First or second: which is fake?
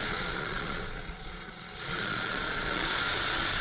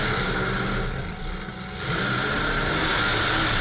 first